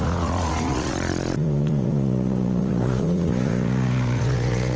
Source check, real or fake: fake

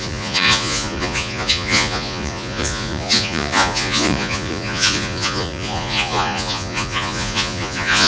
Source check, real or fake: fake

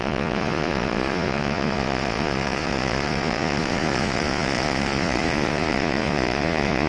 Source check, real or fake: fake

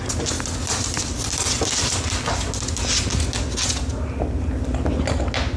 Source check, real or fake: real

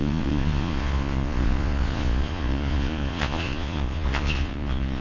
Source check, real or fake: fake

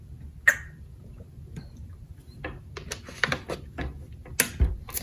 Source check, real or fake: real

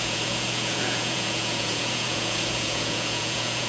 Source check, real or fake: fake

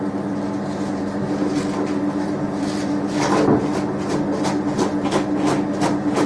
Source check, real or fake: real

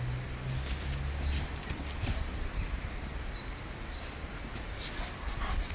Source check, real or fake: real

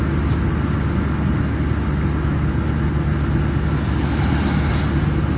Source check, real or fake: real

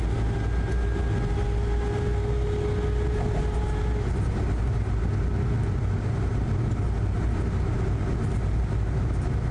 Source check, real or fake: real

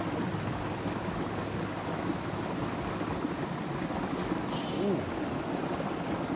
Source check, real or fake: real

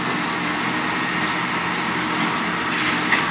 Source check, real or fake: real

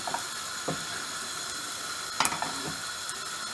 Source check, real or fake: real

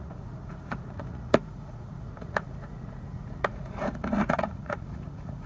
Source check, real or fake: fake